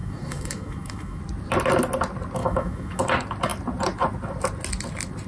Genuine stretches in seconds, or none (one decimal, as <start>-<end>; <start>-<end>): 1.2-2.4; 3.0-5.3